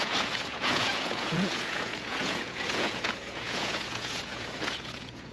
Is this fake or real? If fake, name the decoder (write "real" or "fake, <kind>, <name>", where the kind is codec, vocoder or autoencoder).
fake, vocoder, Vocos